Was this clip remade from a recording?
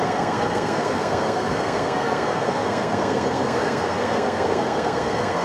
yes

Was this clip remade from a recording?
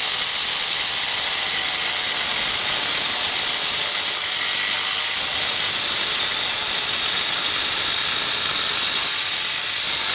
no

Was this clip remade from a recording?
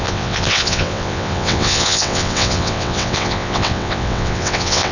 yes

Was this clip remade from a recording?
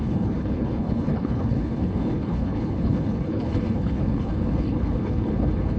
yes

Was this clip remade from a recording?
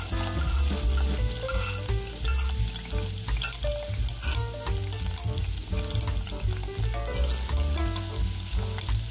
no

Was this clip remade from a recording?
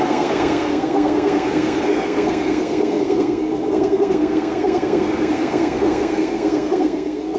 yes